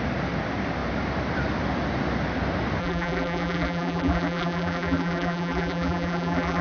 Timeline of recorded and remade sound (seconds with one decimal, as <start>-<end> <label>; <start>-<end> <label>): 0.0-2.8 recorded; 2.8-6.6 remade